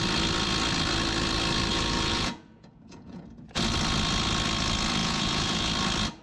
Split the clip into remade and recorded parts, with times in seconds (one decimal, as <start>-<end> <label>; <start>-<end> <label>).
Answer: 0.0-1.7 recorded; 1.7-3.2 remade; 3.2-5.0 recorded; 5.0-5.7 remade; 5.7-6.2 recorded